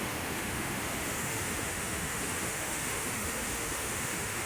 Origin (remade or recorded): remade